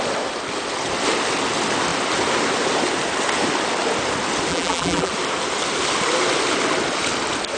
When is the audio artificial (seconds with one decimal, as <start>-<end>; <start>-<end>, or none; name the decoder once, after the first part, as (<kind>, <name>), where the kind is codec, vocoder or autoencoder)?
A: 4.5-5.1 (vocoder, BigVGAN v2)